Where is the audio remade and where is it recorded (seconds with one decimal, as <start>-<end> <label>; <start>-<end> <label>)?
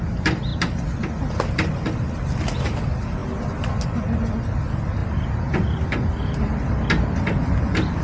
0.0-8.0 recorded